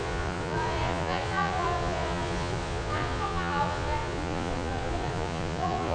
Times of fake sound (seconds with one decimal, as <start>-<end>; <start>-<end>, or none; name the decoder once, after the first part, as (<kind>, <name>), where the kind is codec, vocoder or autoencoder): 0.0-5.9 (vocoder, Vocos)